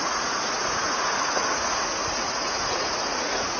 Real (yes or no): no